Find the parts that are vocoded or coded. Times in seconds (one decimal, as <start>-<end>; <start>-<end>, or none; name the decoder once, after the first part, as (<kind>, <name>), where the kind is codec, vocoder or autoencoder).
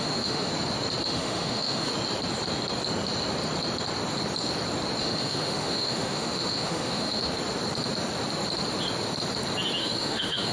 0.0-0.5 (autoencoder, DAC-VAE); 1.0-1.9; 5.0-7.2; 9.8-10.5